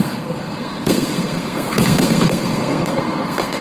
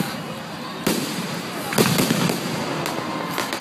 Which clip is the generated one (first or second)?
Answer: first